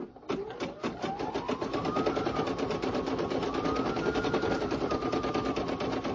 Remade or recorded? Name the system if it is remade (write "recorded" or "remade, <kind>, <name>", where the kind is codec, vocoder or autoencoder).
recorded